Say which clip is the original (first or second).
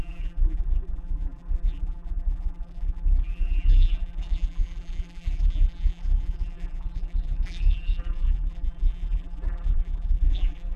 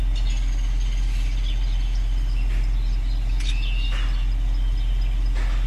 second